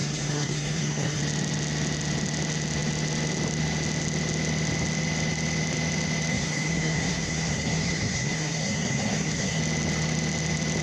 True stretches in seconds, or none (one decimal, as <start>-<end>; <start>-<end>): 1.2-6.3; 9.6-10.8